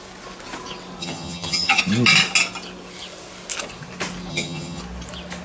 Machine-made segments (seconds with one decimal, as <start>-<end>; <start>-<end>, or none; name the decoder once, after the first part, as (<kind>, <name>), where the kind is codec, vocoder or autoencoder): 1.0-1.8 (vocoder, HiFi-GAN); 4.3-4.8